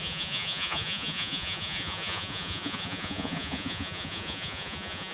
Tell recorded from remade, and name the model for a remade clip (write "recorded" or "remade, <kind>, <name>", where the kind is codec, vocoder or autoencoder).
remade, vocoder, Vocos